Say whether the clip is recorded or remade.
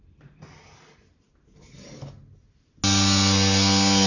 recorded